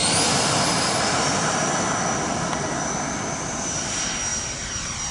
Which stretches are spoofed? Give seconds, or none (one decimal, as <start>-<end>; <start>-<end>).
none